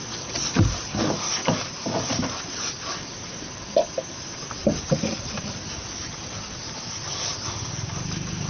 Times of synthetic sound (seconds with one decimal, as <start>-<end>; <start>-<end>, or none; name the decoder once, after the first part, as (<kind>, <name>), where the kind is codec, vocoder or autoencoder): 1.4-3.7 (vocoder, BigVGAN v2)